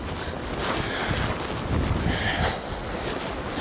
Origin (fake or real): real